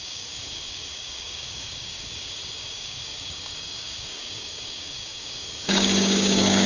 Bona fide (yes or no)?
no